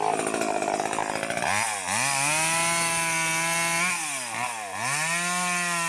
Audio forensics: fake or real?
real